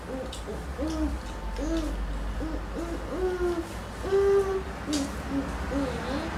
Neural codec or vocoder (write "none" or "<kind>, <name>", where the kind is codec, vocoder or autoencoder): none